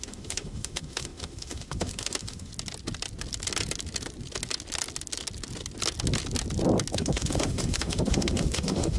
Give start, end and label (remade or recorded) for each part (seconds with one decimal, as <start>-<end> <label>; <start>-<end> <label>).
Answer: 0.0-2.5 remade; 2.5-6.9 recorded; 6.9-9.0 remade